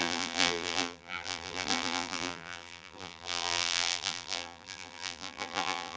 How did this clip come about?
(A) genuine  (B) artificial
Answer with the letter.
B